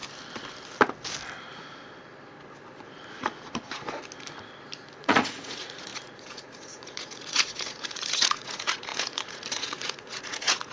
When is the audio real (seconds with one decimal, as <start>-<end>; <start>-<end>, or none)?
0.0-5.0